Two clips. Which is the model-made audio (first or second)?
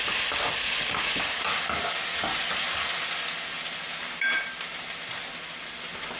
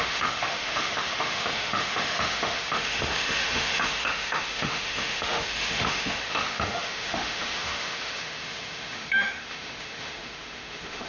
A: second